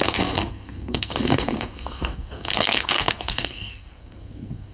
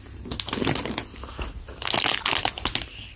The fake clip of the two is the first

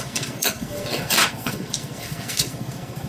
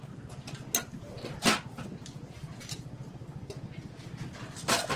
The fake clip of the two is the first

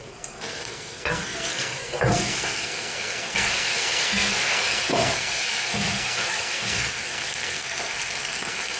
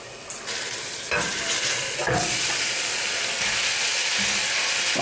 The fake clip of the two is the first